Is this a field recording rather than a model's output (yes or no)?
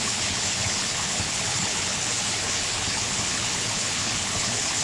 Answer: no